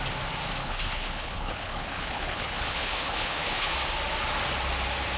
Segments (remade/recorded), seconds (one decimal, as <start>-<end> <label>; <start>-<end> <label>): 0.0-0.6 recorded; 0.6-3.7 remade; 3.7-5.2 recorded